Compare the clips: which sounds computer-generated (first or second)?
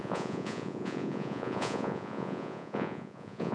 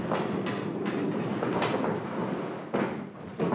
first